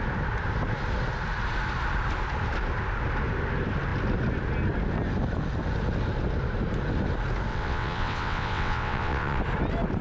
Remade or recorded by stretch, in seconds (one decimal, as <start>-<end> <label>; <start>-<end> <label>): 0.0-7.5 recorded; 7.5-9.4 remade; 9.4-10.0 recorded